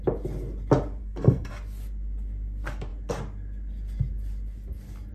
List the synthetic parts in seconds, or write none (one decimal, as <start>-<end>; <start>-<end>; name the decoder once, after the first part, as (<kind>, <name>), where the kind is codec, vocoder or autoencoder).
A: 1.0-1.5 (codec, SNAC)